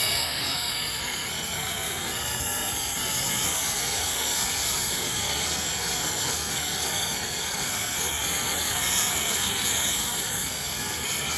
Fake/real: fake